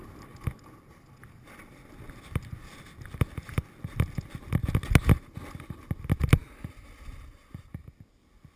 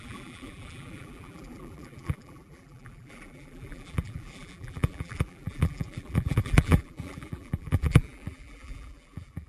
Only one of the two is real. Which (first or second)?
first